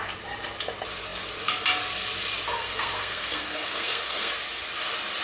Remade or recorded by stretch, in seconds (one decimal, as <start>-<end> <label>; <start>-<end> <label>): 0.0-2.6 recorded; 2.6-4.3 remade; 4.3-5.2 recorded